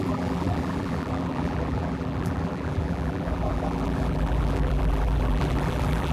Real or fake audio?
fake